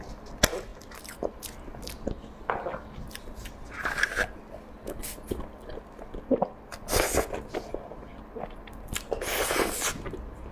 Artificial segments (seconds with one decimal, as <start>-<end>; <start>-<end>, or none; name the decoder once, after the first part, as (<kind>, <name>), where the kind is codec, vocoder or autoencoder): none